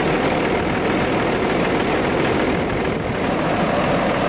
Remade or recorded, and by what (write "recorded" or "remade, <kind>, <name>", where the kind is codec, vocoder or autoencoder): recorded